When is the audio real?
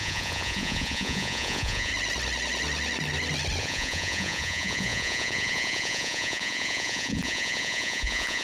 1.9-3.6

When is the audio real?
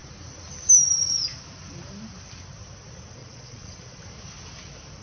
0.0-3.2; 4.0-5.0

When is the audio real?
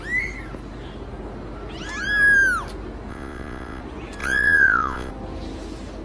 0.0-3.1; 3.8-4.2; 5.1-6.0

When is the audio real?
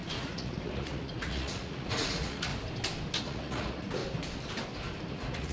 2.5-3.2; 4.0-5.1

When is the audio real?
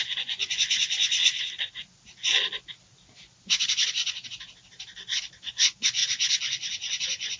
1.2-5.5; 6.0-7.0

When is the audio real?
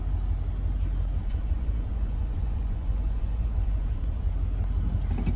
0.0-1.2; 4.3-5.4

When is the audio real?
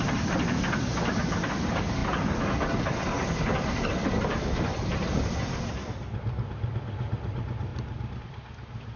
0.0-9.0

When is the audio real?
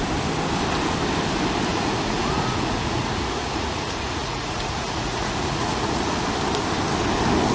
0.0-1.7; 6.2-7.5